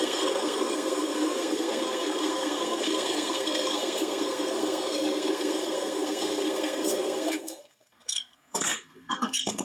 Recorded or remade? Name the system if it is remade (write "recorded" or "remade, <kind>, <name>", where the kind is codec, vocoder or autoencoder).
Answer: remade, codec, SNAC